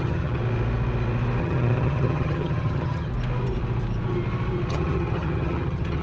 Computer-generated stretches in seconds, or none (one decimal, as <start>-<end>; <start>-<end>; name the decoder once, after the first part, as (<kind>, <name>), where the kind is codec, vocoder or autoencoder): 0.0-0.4 (vocoder, HiFi-GAN); 1.4-3.1; 4.7-6.0